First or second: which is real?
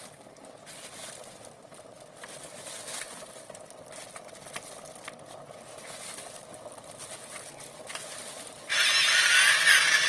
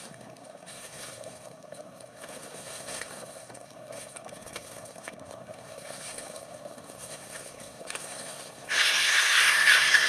first